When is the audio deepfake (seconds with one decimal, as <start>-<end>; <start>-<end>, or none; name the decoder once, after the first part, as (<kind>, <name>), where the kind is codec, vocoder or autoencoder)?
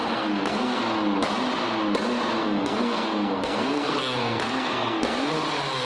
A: 0.0-0.8 (codec, SNAC); 2.4-5.3